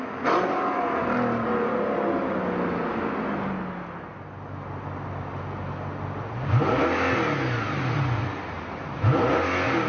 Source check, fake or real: real